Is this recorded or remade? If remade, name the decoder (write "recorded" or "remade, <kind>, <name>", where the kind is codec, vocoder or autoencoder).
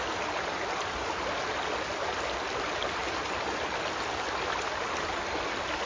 recorded